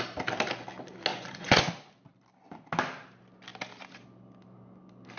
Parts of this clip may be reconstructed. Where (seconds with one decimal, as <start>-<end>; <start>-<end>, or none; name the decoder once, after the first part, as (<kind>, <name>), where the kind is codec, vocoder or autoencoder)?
1.1-1.6 (vocoder, Vocos)